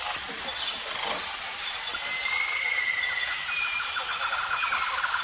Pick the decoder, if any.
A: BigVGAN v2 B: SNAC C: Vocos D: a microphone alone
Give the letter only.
D